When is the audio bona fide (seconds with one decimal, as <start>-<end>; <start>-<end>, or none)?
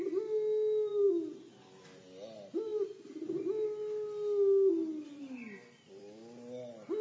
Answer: 0.0-7.0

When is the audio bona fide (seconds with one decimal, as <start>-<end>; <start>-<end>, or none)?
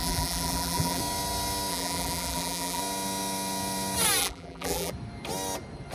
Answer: 1.0-1.7; 2.8-4.2; 4.9-5.9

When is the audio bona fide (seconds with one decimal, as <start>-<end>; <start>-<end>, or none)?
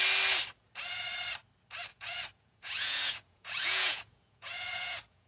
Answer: 0.0-1.9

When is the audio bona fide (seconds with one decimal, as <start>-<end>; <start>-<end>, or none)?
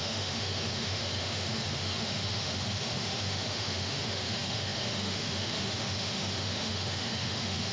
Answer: none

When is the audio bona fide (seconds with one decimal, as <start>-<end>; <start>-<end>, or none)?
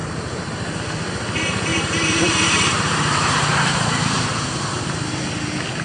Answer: 0.8-1.7; 5.2-5.8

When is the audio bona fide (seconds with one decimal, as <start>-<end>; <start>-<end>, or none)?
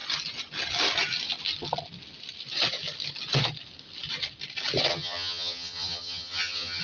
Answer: 0.0-4.9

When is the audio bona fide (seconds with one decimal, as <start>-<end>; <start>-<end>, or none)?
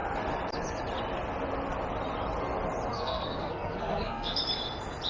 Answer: 0.0-2.9; 4.4-5.1